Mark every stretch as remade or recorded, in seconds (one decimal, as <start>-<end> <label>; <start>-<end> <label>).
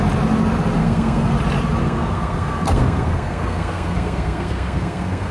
0.0-0.8 recorded; 0.8-1.3 remade; 1.3-1.8 recorded; 1.8-5.3 remade